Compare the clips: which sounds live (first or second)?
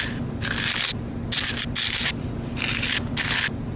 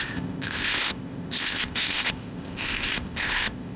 first